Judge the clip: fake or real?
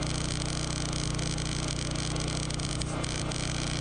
real